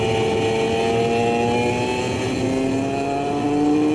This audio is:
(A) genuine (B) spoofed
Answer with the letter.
A